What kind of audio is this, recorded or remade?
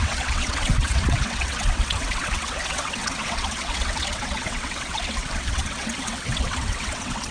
remade